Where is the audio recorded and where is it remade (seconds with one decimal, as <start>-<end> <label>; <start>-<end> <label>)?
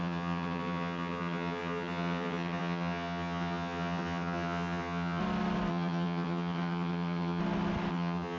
0.0-5.2 remade; 5.2-5.7 recorded; 5.7-7.4 remade; 7.4-7.9 recorded; 7.9-8.4 remade